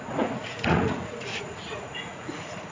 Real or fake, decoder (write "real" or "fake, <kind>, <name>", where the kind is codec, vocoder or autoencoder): fake, vocoder, Vocos